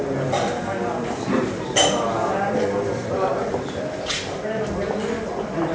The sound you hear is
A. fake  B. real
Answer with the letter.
B